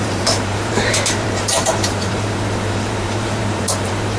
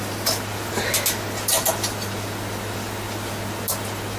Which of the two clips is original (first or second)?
second